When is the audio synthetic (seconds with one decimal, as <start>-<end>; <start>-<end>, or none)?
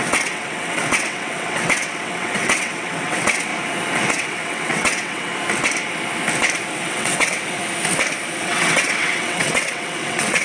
0.0-3.5; 4.1-5.3; 6.7-7.6; 8.4-10.4